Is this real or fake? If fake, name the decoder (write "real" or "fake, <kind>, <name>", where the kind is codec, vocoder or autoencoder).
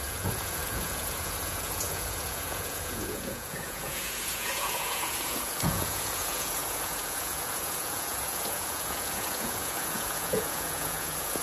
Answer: fake, vocoder, Vocos